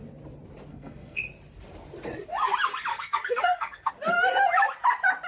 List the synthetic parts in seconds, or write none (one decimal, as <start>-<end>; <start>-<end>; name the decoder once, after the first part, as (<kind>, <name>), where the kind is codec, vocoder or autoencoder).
0.7-1.2 (codec, SNAC); 2.9-3.9